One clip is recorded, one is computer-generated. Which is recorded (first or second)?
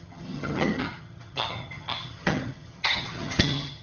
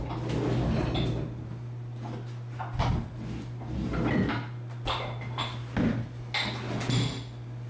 second